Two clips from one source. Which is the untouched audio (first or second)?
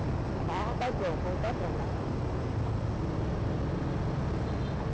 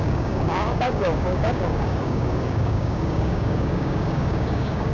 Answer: first